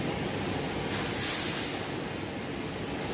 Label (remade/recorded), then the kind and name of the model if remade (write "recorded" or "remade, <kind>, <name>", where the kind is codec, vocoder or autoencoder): recorded